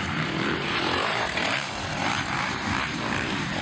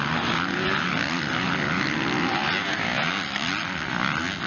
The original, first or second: second